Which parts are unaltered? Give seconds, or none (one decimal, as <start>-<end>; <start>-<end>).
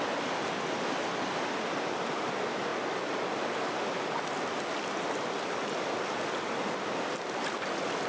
0.0-8.1